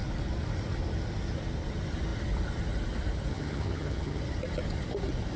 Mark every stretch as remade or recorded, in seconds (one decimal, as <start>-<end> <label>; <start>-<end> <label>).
0.0-3.3 recorded; 3.3-4.2 remade; 4.2-5.4 recorded